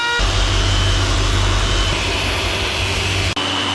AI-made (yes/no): no